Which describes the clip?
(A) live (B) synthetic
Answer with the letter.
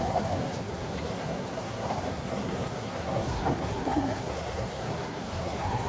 B